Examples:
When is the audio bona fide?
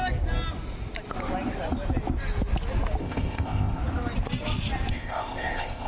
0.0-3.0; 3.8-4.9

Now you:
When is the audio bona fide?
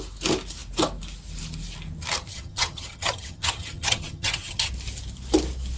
0.0-2.3; 4.7-5.8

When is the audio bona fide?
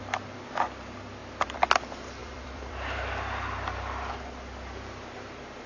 0.0-1.2; 1.8-2.2; 4.1-5.7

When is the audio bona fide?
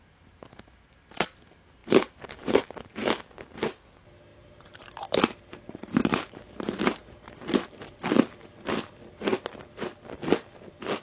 0.0-1.8; 2.6-4.3; 8.0-11.0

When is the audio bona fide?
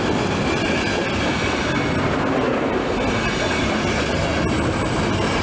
0.0-5.4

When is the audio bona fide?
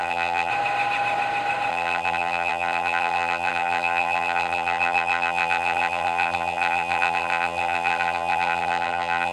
0.5-1.7